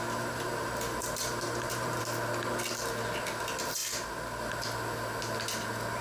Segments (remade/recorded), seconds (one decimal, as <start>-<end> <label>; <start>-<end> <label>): 0.0-2.0 remade; 2.0-6.0 recorded

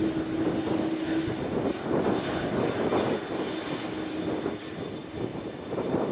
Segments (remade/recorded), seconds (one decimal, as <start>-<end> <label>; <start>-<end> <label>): 0.0-5.3 recorded; 5.3-6.1 remade